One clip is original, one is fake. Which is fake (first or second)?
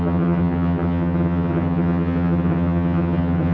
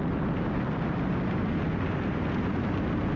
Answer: first